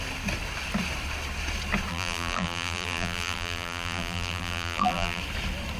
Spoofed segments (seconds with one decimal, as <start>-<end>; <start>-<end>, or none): 1.9-5.2